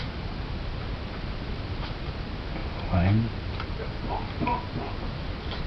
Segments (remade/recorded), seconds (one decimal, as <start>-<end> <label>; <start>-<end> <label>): 0.0-5.7 recorded